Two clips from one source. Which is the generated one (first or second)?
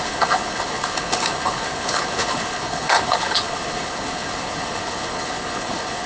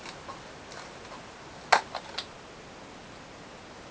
first